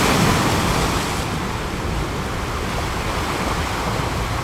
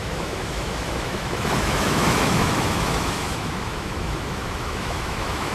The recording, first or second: first